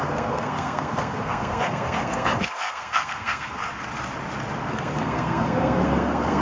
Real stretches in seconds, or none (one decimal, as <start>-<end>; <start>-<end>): 3.6-4.6